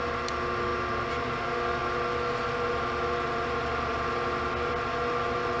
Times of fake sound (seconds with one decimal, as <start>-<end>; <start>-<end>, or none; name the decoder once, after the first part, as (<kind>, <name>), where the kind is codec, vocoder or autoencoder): none